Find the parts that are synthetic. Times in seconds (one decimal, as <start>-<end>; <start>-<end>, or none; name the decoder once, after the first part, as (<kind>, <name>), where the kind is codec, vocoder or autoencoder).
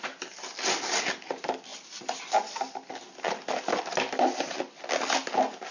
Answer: none